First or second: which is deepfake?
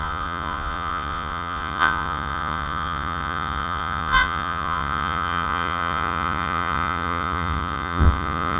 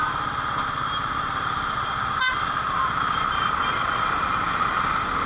first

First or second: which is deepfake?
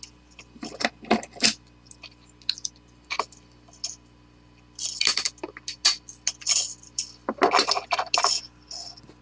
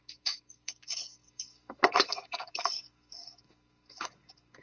second